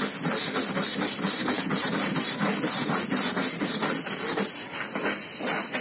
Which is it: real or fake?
real